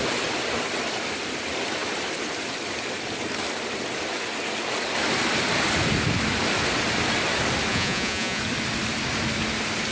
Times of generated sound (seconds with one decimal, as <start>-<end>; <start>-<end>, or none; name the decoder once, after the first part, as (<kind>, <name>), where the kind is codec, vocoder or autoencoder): 7.7-8.4 (vocoder, Vocos)